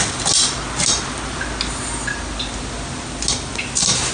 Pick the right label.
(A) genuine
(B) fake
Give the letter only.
A